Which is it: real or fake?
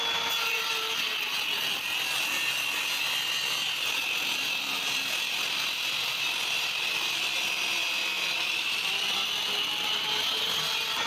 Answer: fake